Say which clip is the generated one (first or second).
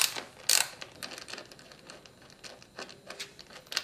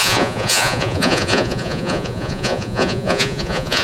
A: second